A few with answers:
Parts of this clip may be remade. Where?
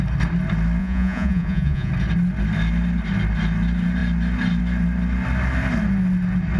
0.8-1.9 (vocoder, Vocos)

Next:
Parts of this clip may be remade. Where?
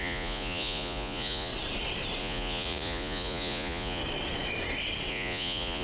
0.0-1.5 (vocoder, Vocos); 2.2-4.0; 5.1-5.8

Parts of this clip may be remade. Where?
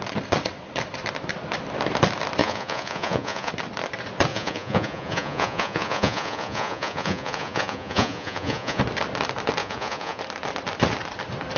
2.4-3.5 (vocoder, Vocos); 4.3-8.8; 9.6-10.2